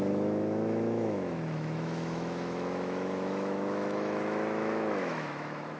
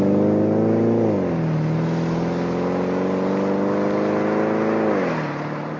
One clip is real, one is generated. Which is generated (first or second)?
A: first